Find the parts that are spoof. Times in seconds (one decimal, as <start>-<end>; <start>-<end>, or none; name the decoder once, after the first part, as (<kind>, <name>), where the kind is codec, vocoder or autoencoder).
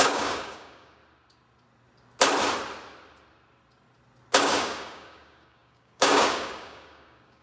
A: 0.0-1.0 (codec, DAC); 4.4-7.4